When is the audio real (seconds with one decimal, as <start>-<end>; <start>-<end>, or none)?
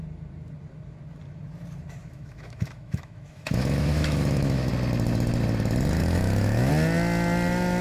0.0-2.0; 4.7-6.0; 6.7-7.8